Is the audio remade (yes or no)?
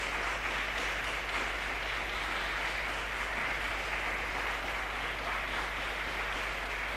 no